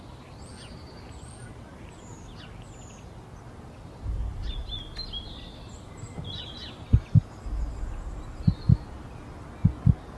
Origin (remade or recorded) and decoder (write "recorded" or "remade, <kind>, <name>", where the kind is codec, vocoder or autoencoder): recorded